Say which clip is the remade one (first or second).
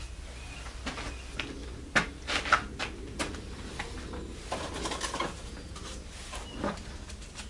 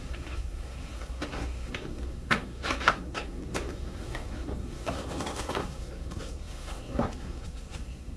second